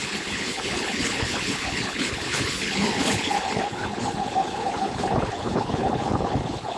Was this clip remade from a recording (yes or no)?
yes